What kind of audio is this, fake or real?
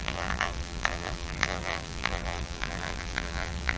fake